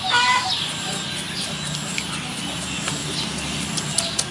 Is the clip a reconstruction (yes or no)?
no